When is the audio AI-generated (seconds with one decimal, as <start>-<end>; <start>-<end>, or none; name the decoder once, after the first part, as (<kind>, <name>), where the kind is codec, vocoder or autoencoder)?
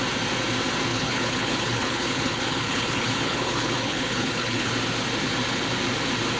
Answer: 0.9-4.7 (codec, HILCodec)